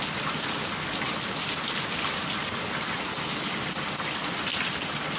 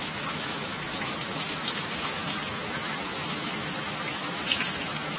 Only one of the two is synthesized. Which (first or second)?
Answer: second